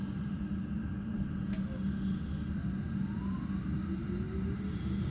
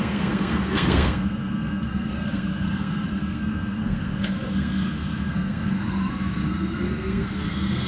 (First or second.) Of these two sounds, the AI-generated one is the second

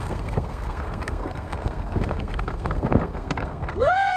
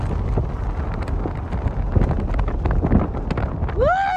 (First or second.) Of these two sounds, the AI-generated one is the first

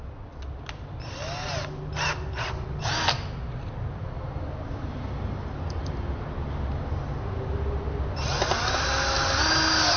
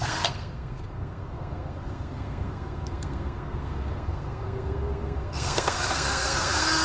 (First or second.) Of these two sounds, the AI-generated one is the second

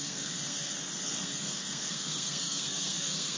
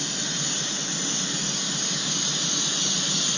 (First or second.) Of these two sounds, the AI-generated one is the first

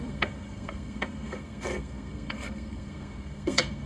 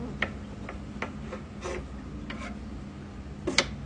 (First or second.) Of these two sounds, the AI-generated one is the first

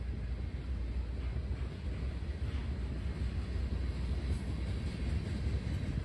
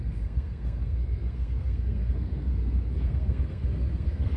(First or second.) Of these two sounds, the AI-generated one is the second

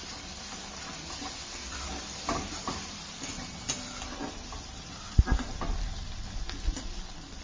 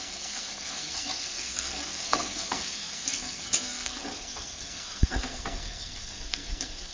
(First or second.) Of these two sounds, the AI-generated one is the second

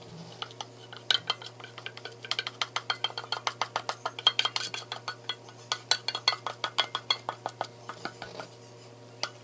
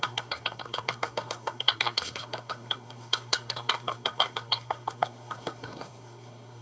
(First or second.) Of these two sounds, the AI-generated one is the second